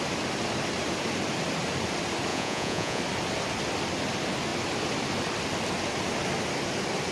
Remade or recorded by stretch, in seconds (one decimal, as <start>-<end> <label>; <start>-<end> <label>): 0.0-2.3 recorded; 2.3-3.0 remade; 3.0-7.1 recorded